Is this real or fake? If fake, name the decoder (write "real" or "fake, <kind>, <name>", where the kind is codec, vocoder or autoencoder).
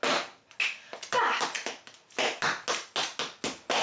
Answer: real